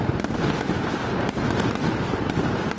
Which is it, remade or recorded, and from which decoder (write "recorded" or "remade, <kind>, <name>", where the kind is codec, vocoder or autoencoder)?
remade, vocoder, BigVGAN v2